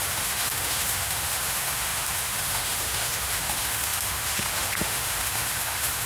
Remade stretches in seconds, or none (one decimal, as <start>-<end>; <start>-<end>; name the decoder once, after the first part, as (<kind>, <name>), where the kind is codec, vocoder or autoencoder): 0.0-6.1 (autoencoder, DAC-VAE)